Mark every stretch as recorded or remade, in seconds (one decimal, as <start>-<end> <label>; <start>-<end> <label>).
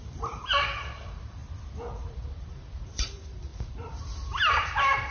0.0-1.4 remade; 1.4-2.0 recorded; 2.0-5.1 remade